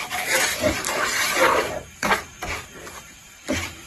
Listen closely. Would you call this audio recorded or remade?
remade